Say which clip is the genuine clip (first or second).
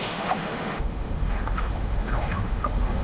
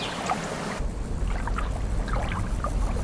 second